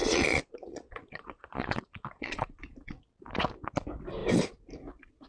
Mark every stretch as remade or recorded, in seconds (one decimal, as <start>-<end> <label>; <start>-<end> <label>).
0.0-2.6 remade; 2.6-5.3 recorded